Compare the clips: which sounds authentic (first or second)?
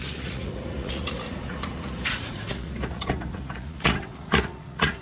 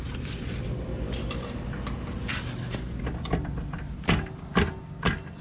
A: second